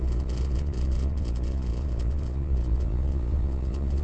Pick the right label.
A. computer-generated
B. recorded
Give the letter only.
A